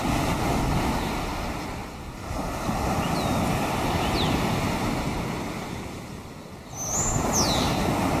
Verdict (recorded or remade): recorded